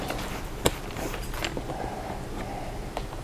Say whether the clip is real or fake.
fake